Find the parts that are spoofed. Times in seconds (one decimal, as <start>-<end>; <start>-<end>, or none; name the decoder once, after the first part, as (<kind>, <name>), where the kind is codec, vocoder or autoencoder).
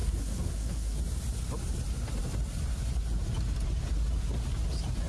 0.0-1.0 (codec, SNAC)